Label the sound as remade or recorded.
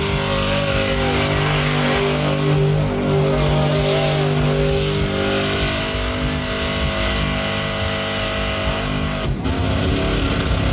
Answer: recorded